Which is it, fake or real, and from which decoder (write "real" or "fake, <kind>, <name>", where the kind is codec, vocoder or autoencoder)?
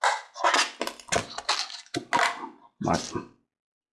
real